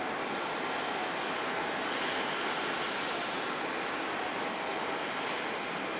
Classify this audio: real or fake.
real